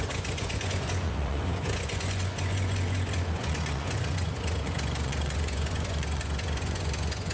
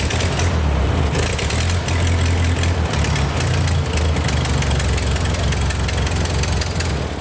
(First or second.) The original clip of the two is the second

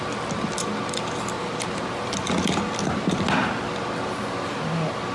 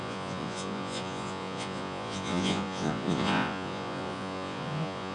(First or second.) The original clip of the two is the first